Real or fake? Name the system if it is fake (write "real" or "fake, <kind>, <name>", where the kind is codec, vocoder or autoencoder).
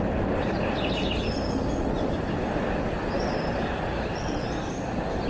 real